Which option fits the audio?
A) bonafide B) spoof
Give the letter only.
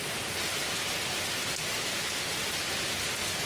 A